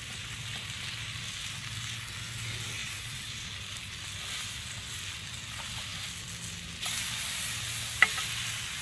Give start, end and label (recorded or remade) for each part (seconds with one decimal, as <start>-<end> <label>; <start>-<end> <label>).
0.0-2.8 recorded; 2.8-3.5 remade; 3.5-8.8 recorded